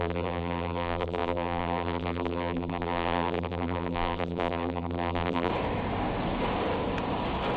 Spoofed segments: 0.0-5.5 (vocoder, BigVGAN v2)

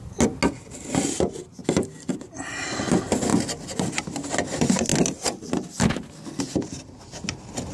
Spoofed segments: none

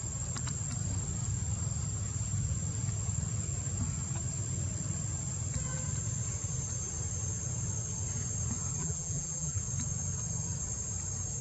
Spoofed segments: 8.8-9.6 (vocoder, BigVGAN v2)

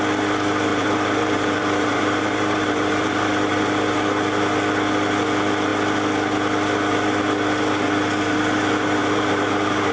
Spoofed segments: 0.7-3.7 (vocoder, BigVGAN v2); 9.0-9.9